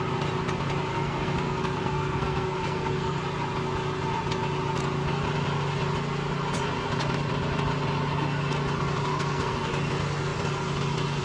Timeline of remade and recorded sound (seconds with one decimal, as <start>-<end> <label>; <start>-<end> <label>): 0.0-0.9 recorded; 0.9-3.2 remade; 3.2-9.1 recorded; 9.1-9.7 remade; 9.7-11.2 recorded